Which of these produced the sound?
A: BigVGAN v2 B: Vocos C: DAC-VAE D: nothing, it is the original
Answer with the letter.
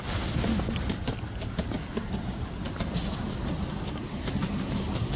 D